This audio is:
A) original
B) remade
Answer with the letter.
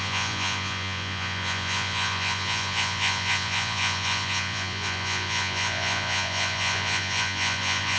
B